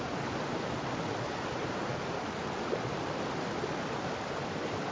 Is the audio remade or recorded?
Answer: recorded